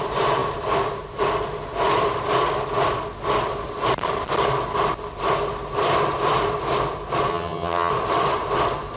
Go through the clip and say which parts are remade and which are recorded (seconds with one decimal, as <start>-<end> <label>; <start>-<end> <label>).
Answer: 0.0-7.3 recorded; 7.3-7.9 remade; 7.9-9.0 recorded